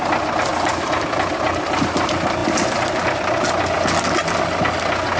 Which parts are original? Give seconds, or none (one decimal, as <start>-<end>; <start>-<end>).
0.0-5.2